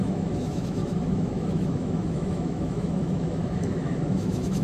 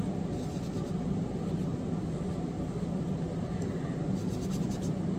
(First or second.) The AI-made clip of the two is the first